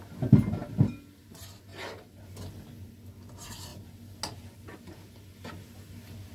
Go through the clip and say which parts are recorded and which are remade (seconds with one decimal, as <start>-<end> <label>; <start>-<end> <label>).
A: 0.0-6.3 recorded